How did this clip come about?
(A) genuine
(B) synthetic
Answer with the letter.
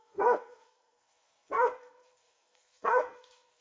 B